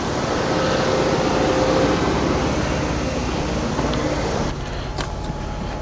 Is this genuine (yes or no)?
yes